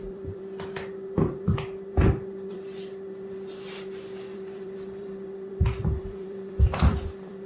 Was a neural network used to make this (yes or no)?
yes